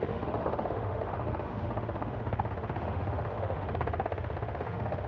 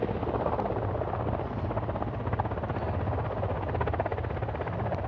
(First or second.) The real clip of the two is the second